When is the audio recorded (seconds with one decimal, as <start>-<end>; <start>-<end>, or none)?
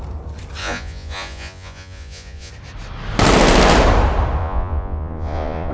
0.0-0.6; 2.5-4.4